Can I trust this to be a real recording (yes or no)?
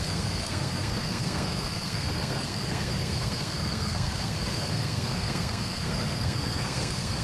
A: no